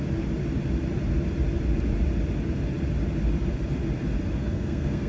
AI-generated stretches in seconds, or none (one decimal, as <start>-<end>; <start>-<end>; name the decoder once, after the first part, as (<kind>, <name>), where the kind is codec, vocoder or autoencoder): 4.4-5.1 (codec, SNAC)